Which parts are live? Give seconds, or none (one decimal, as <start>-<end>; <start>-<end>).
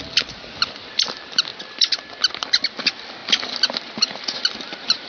0.0-5.1